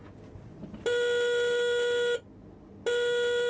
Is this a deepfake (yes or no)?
no